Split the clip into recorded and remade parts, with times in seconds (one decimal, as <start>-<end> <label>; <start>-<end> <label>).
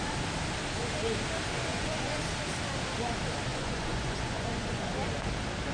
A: 0.0-1.7 recorded; 1.7-2.2 remade; 2.2-3.5 recorded; 3.5-4.9 remade; 4.9-5.7 recorded